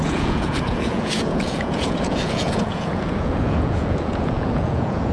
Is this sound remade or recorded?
remade